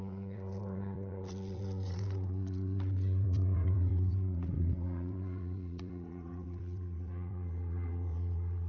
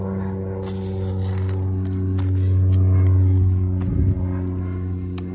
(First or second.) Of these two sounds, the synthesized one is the first